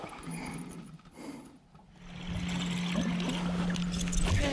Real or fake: real